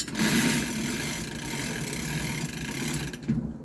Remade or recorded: recorded